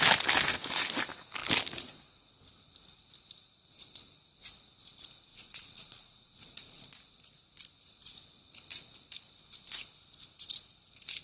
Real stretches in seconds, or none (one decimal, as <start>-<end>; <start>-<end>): 0.0-5.3; 6.9-11.2